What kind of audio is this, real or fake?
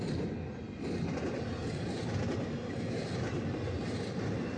real